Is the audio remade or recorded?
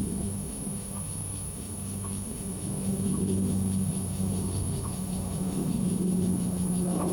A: remade